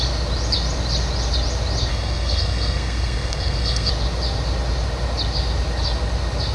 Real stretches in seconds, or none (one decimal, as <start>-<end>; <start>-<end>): 0.0-1.9; 3.9-6.5